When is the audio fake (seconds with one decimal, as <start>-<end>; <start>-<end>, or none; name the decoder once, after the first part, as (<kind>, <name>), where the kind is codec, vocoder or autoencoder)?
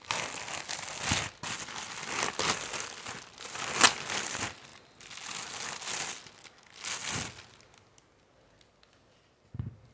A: none